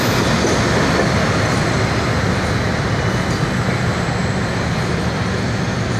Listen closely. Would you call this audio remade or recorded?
recorded